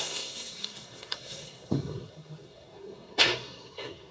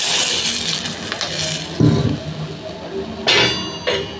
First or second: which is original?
second